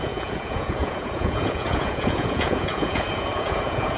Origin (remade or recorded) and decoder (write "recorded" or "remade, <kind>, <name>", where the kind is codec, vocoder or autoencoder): remade, vocoder, Vocos